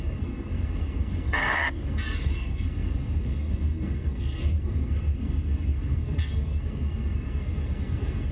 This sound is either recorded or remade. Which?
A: remade